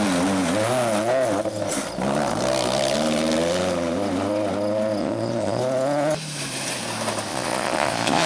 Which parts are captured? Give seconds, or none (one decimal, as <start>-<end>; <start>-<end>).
0.0-5.0; 5.6-7.3